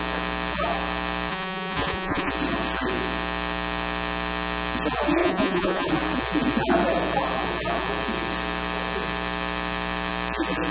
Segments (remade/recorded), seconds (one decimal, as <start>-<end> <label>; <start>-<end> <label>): 0.0-1.3 recorded; 1.3-2.3 remade; 2.3-5.2 recorded; 5.2-5.9 remade; 5.9-10.7 recorded